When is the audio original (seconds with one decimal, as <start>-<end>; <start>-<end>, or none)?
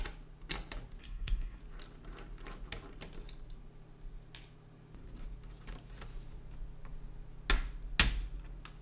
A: 0.0-1.0; 1.6-8.8